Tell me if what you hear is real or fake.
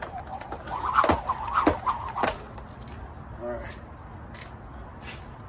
real